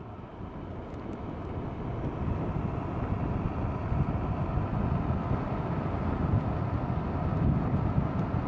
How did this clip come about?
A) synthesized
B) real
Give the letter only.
B